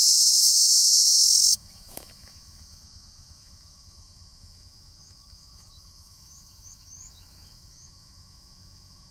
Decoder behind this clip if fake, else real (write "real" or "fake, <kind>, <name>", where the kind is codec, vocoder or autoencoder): fake, autoencoder, DAC-VAE